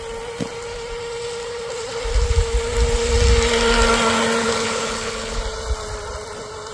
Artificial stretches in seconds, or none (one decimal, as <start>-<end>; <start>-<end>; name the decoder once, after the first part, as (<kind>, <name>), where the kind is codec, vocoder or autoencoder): 4.4-5.4 (codec, HILCodec)